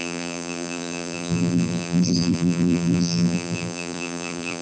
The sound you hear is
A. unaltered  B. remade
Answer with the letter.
B